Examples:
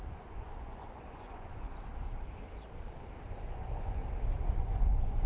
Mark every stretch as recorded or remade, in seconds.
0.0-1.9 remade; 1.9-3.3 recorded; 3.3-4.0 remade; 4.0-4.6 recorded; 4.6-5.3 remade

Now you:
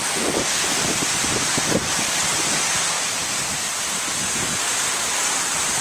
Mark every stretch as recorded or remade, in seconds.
0.0-5.8 recorded

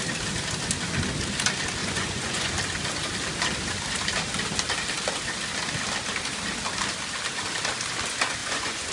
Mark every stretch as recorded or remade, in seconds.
0.0-1.8 recorded; 1.8-2.5 remade; 2.5-8.4 recorded; 8.4-8.9 remade

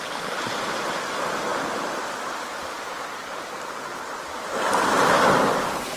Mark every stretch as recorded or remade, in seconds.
0.0-6.0 recorded

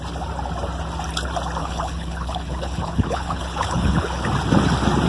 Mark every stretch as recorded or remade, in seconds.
0.0-1.6 recorded; 1.6-4.3 remade; 4.3-5.1 recorded

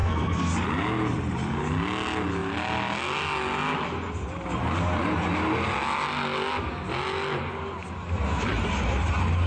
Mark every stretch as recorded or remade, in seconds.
0.0-0.5 remade; 0.5-9.5 recorded

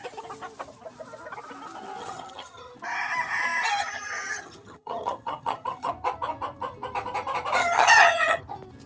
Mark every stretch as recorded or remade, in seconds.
0.0-2.0 recorded; 2.0-2.7 remade; 2.7-3.8 recorded; 3.8-5.9 remade; 5.9-7.6 recorded; 7.6-8.4 remade; 8.4-8.9 recorded

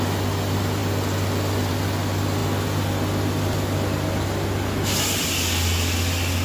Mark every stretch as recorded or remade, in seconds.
0.0-6.4 recorded